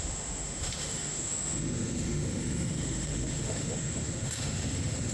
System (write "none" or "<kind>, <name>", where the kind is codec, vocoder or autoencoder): autoencoder, DAC-VAE